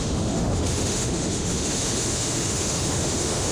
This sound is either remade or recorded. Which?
remade